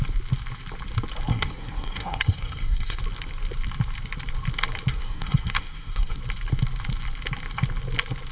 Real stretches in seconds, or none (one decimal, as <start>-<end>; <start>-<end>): 0.0-1.3; 3.0-4.9; 6.2-8.3